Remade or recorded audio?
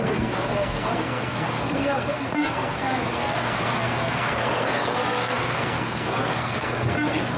remade